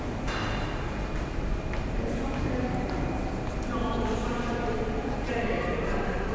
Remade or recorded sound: remade